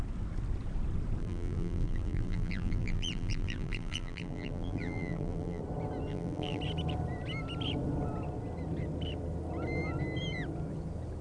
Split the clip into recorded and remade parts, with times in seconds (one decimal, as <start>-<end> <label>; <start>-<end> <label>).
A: 0.0-1.2 recorded; 1.2-5.6 remade; 5.6-6.1 recorded; 6.1-6.6 remade; 6.6-11.2 recorded